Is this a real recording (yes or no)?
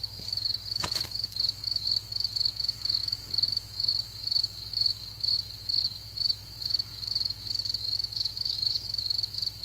no